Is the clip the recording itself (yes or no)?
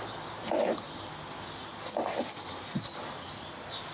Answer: yes